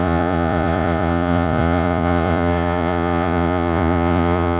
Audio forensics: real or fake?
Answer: fake